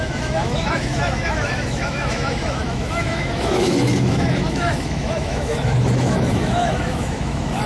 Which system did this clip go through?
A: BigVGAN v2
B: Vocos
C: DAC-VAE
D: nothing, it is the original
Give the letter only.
C